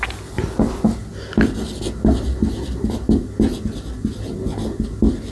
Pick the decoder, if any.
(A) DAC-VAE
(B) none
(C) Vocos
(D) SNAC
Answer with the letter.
B